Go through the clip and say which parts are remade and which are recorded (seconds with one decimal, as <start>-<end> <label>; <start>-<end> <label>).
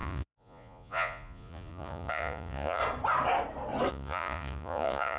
0.0-2.8 remade; 2.8-3.9 recorded; 3.9-5.2 remade